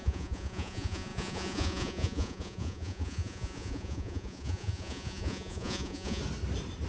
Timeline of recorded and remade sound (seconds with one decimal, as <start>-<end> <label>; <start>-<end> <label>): 0.0-6.2 remade; 6.2-6.9 recorded